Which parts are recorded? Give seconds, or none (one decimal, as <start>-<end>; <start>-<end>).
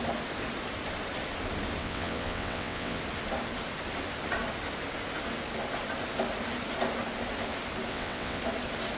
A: 0.0-1.8; 3.0-7.9; 8.4-9.0